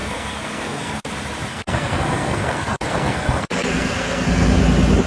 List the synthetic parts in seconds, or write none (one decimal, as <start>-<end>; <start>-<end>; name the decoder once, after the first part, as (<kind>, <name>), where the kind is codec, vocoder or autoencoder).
0.0-1.1 (codec, SNAC); 1.5-4.6